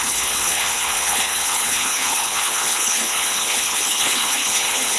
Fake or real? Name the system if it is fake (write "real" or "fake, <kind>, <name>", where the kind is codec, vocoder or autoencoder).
fake, codec, HILCodec